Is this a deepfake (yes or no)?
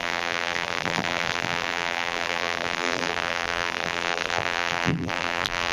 yes